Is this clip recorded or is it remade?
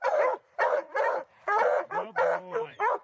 remade